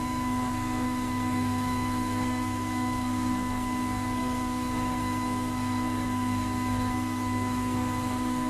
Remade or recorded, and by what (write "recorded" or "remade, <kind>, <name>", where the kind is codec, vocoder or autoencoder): remade, codec, SNAC